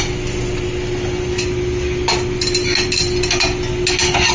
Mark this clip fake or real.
real